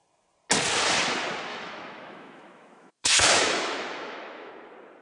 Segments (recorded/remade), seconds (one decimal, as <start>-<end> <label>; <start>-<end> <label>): 0.0-1.5 recorded; 1.5-4.5 remade; 4.5-5.0 recorded

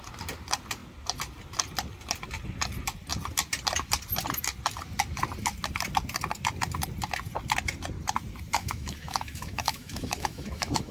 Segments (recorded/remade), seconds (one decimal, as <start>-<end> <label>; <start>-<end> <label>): 0.0-8.6 recorded; 8.6-10.9 remade

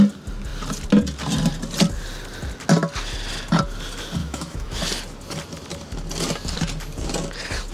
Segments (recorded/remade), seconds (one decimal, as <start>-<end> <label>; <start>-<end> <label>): 0.0-4.2 recorded; 4.2-4.8 remade; 4.8-7.7 recorded

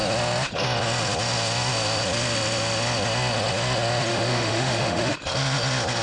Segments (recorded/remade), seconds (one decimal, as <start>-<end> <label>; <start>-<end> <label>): 0.0-4.1 recorded; 4.1-5.0 remade; 5.0-6.0 recorded